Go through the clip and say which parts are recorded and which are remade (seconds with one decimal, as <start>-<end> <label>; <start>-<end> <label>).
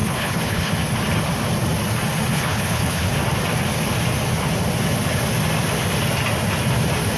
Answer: 0.0-0.7 remade; 0.7-2.3 recorded; 2.3-3.1 remade; 3.1-7.2 recorded